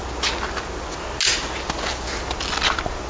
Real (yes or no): yes